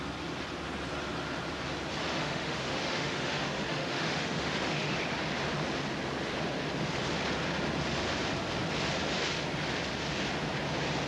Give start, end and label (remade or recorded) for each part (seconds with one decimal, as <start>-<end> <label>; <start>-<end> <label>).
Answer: 0.0-2.1 recorded; 2.1-4.9 remade; 4.9-11.1 recorded